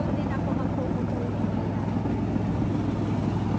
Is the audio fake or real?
real